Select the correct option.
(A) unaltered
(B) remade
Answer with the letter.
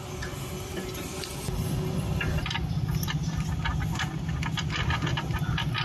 A